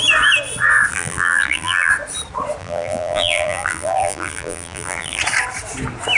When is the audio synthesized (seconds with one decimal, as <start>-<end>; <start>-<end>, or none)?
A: 0.9-1.9; 2.6-5.2